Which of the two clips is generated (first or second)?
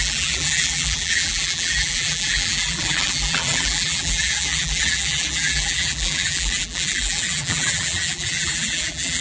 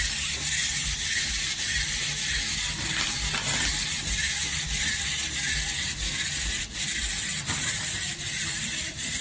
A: first